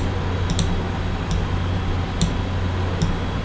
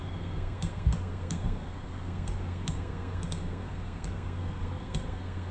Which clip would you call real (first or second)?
first